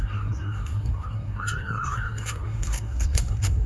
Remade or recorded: remade